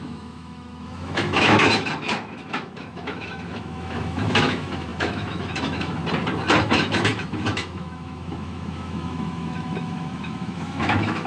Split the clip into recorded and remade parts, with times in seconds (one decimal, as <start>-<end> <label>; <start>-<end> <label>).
0.0-6.0 remade; 6.0-6.6 recorded; 6.6-11.3 remade